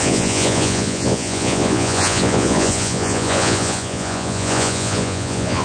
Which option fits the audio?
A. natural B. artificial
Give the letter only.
B